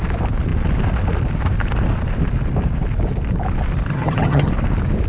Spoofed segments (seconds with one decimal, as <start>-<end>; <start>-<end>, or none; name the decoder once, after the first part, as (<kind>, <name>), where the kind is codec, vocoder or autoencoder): 3.9-4.5 (vocoder, HiFi-GAN)

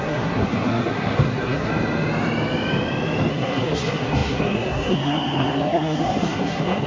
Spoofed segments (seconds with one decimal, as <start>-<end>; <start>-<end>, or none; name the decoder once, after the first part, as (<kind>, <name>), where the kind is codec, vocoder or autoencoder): 0.0-1.7 (codec, SNAC); 3.3-6.9

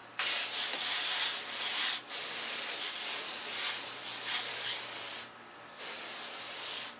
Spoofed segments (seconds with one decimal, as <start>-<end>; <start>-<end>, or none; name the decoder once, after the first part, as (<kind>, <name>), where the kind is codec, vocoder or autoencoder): 4.5-5.0 (codec, DAC)

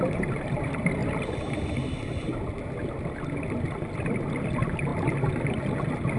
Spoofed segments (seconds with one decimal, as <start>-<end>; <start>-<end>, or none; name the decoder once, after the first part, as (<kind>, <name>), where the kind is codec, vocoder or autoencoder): none